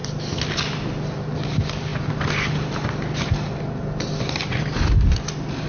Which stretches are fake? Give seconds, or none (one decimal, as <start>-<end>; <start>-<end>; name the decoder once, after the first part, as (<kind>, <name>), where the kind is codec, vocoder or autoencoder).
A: none